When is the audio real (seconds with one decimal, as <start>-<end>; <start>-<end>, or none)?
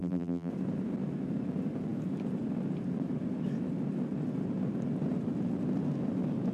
0.5-6.5